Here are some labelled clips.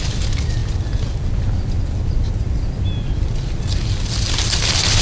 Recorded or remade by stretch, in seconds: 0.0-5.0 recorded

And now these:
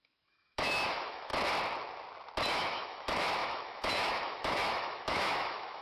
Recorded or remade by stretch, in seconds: 0.0-1.3 remade; 1.3-2.5 recorded; 2.5-5.8 remade